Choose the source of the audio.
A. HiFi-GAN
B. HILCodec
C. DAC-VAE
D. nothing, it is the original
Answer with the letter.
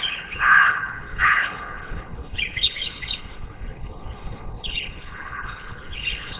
B